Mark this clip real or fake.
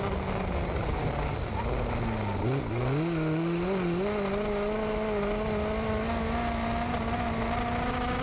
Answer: real